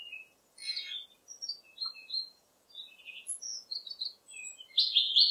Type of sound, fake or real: fake